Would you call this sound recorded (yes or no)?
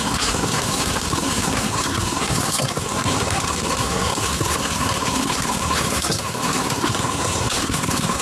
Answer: no